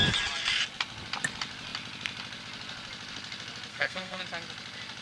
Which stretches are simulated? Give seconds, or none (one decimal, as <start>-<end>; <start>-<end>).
3.7-4.2